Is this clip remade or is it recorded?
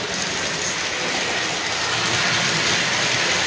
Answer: recorded